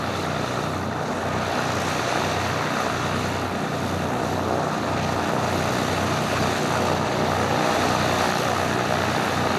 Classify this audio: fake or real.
real